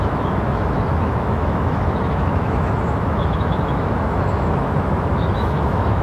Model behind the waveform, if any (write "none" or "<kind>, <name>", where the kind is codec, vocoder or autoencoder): autoencoder, DAC-VAE